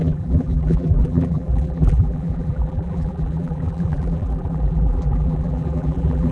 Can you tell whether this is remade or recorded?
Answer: remade